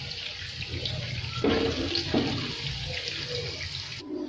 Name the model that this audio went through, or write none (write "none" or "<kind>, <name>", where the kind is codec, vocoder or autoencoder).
none